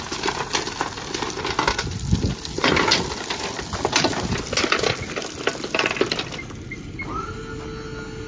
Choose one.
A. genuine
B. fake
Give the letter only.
A